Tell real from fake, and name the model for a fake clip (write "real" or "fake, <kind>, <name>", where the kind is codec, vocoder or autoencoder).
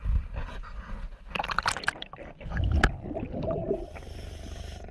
real